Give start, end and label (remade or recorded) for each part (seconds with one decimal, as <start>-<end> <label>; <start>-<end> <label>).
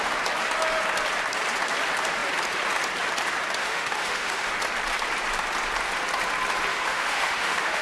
0.0-3.6 recorded; 3.6-4.5 remade; 4.5-6.7 recorded; 6.7-7.8 remade